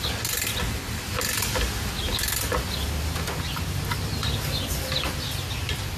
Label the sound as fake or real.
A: real